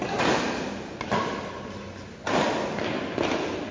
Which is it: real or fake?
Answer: real